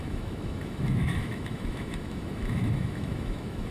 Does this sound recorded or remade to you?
remade